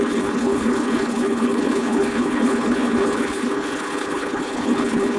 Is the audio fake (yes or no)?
yes